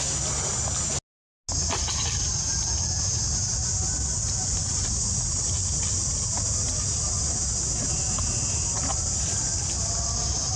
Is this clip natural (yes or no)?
yes